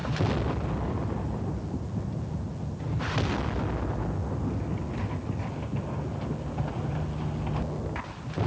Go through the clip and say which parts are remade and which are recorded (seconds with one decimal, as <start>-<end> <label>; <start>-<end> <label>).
0.0-8.5 recorded